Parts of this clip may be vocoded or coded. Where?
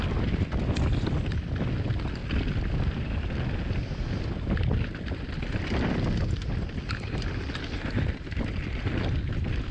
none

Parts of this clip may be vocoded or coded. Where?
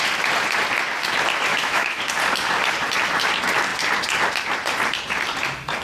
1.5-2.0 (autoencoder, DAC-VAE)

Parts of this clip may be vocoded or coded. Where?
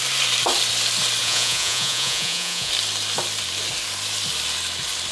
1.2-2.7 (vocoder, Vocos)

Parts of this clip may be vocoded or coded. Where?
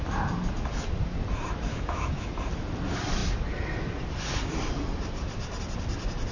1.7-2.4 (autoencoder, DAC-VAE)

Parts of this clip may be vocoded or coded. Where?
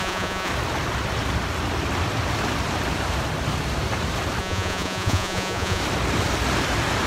0.0-0.5 (vocoder, Vocos); 4.4-5.8